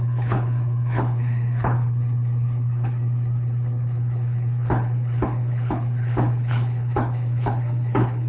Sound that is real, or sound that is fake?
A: fake